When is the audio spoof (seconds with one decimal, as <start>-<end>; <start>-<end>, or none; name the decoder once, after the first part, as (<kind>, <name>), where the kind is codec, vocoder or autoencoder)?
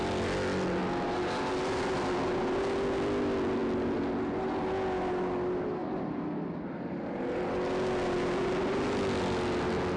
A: none